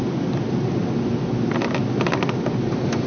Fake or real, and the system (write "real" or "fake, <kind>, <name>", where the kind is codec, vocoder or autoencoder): real